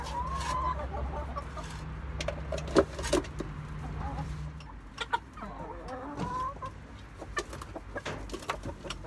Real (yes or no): yes